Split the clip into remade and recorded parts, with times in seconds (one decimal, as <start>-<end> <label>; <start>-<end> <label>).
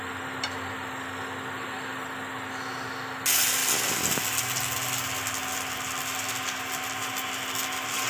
0.0-8.1 recorded